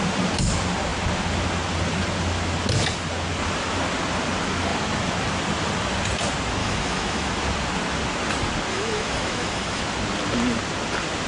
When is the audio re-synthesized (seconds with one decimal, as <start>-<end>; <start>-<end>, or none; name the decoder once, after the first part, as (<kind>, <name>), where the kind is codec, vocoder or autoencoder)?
6.6-7.3 (autoencoder, DAC-VAE); 8.7-9.8